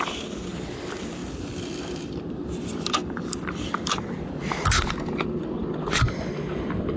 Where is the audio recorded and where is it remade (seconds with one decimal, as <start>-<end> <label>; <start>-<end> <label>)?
0.0-1.2 recorded; 1.2-4.7 remade; 4.7-7.0 recorded